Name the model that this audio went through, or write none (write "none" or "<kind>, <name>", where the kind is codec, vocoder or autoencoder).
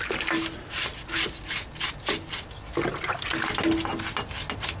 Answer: none